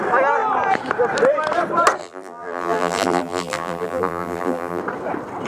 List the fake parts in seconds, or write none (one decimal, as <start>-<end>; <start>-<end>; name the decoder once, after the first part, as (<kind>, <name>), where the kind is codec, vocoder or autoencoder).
2.0-4.8 (vocoder, BigVGAN v2)